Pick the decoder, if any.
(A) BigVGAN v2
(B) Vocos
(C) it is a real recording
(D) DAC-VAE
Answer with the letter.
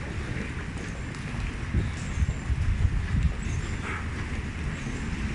C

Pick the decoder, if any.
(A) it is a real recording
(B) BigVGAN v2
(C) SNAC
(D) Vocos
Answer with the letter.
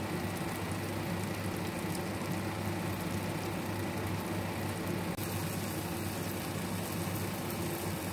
A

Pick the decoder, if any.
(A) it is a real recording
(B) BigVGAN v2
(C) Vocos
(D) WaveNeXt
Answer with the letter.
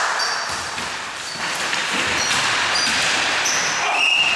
B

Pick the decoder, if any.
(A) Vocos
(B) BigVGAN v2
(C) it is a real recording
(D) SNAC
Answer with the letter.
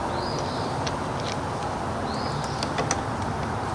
C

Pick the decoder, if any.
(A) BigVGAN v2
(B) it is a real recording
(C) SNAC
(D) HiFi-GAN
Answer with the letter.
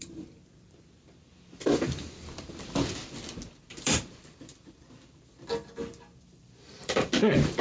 A